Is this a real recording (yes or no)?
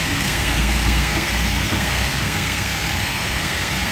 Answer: no